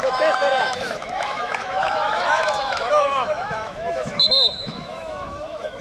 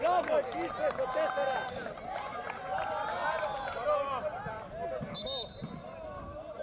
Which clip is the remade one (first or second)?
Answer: first